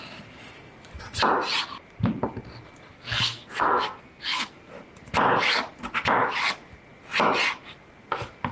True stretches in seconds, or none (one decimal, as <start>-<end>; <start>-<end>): 0.0-2.9; 4.7-8.5